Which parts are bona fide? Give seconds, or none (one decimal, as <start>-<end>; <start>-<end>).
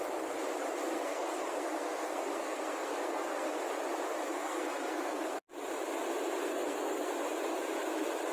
0.0-0.9; 3.6-4.3; 5.5-6.4; 7.1-8.3